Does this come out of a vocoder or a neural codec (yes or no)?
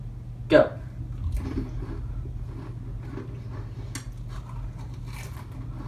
no